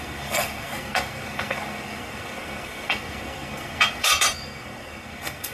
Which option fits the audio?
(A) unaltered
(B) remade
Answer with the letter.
B